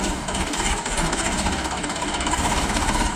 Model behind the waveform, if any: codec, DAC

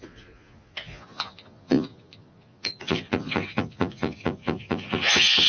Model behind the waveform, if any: vocoder, Vocos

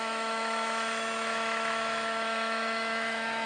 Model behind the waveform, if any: autoencoder, DAC-VAE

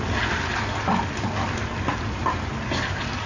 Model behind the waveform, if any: none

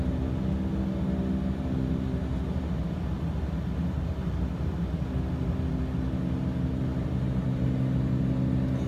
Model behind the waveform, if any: none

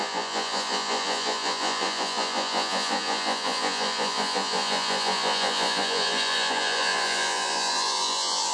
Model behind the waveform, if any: vocoder, Vocos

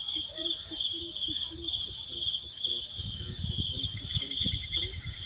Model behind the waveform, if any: codec, DAC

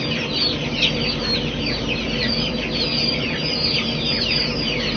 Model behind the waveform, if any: none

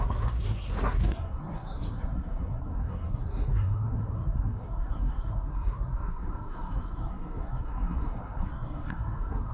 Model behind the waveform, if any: codec, SNAC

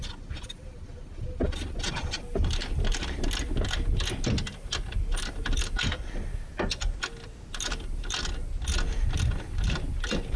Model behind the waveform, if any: none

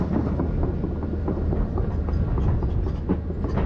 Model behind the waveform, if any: none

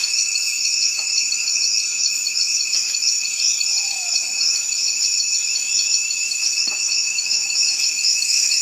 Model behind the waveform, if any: autoencoder, DAC-VAE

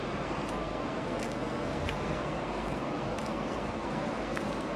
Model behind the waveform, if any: codec, SNAC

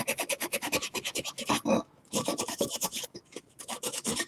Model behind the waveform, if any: autoencoder, DAC-VAE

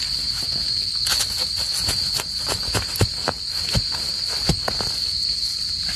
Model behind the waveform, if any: none